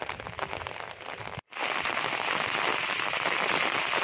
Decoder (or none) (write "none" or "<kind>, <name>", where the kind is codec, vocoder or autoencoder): none